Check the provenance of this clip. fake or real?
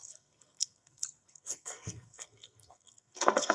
fake